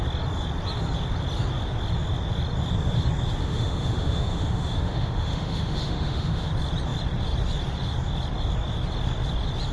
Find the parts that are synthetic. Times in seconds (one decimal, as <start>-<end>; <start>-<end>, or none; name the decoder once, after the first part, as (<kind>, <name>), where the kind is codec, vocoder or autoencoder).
3.4-6.5 (autoencoder, DAC-VAE)